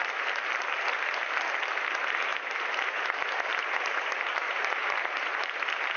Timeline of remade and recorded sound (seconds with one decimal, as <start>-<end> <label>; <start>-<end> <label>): 0.0-2.3 recorded; 2.3-6.0 remade